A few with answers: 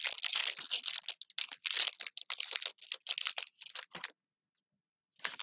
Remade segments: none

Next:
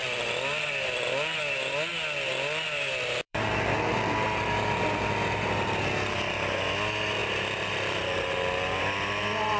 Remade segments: 0.0-1.4 (vocoder, BigVGAN v2); 1.9-5.8; 7.2-8.8

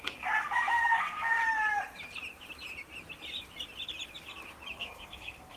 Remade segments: 0.0-1.4 (codec, SNAC); 4.8-5.6